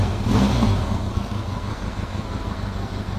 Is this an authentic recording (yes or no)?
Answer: no